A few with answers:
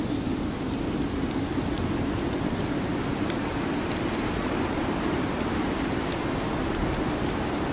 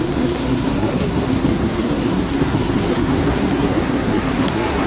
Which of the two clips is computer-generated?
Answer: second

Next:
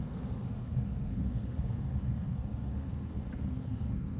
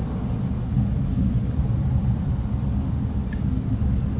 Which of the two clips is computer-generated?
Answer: first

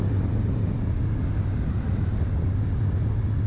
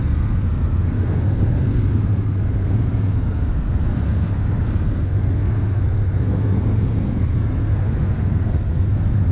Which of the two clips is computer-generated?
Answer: second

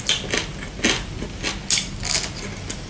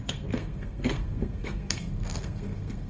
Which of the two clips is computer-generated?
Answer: second